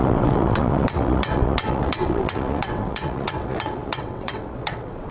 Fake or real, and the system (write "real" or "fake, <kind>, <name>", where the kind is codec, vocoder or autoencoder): fake, vocoder, WaveNeXt